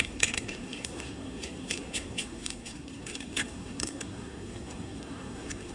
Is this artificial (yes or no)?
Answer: yes